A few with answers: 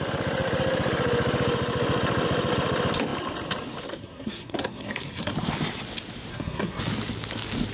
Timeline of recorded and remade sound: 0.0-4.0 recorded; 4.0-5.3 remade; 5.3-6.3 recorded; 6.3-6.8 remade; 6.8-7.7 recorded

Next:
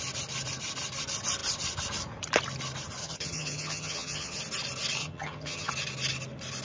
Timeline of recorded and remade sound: 0.0-3.0 recorded; 3.0-4.4 remade; 4.4-5.0 recorded; 5.0-5.7 remade; 5.7-6.6 recorded

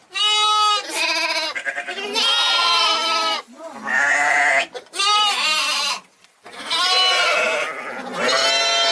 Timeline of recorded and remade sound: 0.0-8.9 recorded

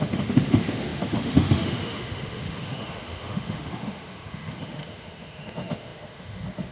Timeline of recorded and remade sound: 0.0-6.7 remade

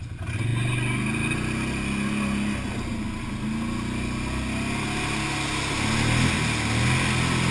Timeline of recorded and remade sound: 0.0-7.5 recorded